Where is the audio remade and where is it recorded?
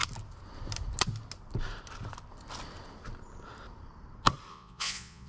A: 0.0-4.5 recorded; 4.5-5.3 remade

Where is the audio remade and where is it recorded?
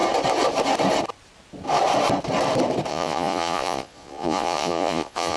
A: 0.0-2.9 recorded; 2.9-5.4 remade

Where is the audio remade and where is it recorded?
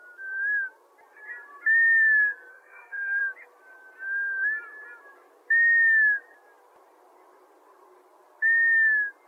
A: 0.0-2.5 recorded; 2.5-3.2 remade; 3.2-9.3 recorded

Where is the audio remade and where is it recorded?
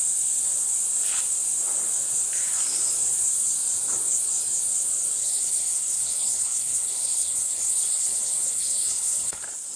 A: 0.0-5.2 recorded; 5.2-9.4 remade; 9.4-9.8 recorded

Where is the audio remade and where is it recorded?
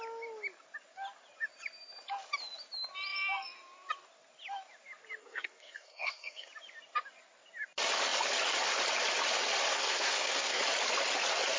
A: 0.0-5.2 recorded; 5.2-6.5 remade; 6.5-9.7 recorded; 9.7-10.6 remade; 10.6-11.6 recorded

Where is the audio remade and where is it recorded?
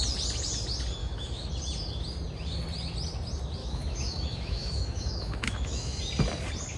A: 0.0-1.0 recorded; 1.0-1.5 remade; 1.5-3.6 recorded; 3.6-6.0 remade; 6.0-6.8 recorded